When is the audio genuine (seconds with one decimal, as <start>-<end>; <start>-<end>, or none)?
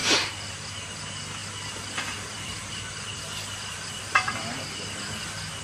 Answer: 1.0-1.4; 4.8-5.6